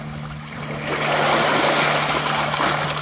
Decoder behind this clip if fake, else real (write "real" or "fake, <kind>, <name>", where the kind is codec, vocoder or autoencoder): real